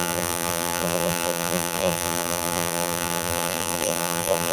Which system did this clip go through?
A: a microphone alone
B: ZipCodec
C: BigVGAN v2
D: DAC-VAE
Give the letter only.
C